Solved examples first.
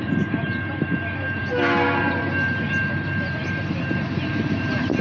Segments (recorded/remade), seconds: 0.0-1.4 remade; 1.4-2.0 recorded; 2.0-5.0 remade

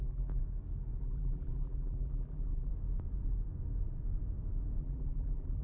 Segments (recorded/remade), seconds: 0.0-0.4 remade; 0.4-1.0 recorded; 1.0-2.7 remade; 2.7-4.8 recorded; 4.8-5.6 remade

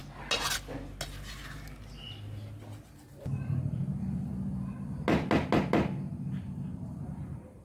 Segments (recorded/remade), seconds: 0.0-3.6 recorded; 3.6-4.3 remade; 4.3-6.5 recorded; 6.5-7.6 remade

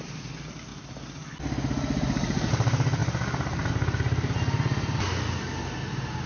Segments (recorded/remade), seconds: 0.0-0.7 recorded; 0.7-1.4 remade; 1.4-6.3 recorded

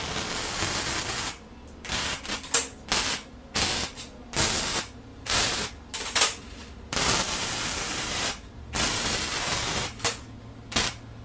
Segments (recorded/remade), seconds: 0.0-5.1 recorded; 5.1-5.7 remade; 5.7-11.2 recorded